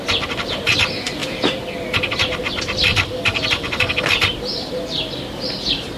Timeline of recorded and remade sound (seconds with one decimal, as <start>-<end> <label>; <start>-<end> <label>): 0.0-6.0 recorded